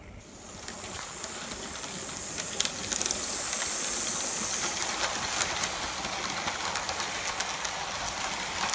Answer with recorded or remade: recorded